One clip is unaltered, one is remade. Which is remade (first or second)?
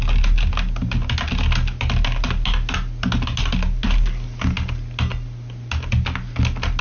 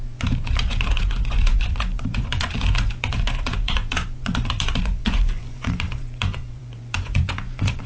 second